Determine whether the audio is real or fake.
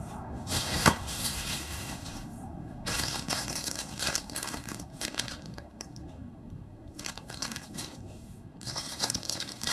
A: fake